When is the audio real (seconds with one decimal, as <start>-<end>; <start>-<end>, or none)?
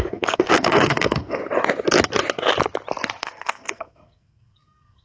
1.4-3.2